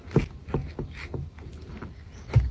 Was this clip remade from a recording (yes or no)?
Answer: no